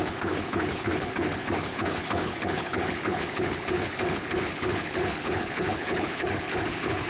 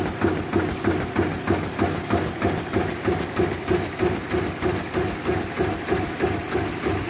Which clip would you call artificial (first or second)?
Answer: first